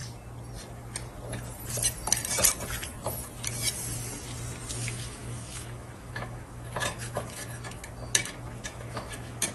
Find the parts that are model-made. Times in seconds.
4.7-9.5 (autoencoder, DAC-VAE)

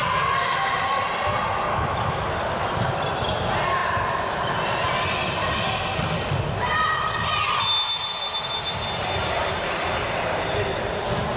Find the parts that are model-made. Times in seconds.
1.7-2.3 (autoencoder, DAC-VAE)

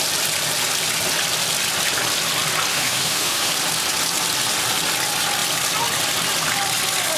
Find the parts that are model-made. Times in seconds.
2.7-3.5 (autoencoder, DAC-VAE)

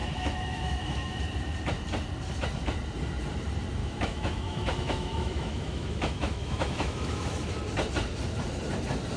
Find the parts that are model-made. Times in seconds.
0.0-1.2 (autoencoder, DAC-VAE); 3.8-7.6

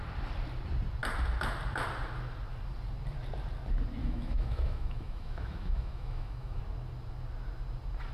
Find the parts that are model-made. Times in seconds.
4.0-6.6 (autoencoder, DAC-VAE)